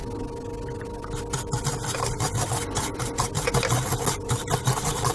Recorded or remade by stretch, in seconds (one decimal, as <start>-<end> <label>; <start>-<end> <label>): 0.0-5.1 recorded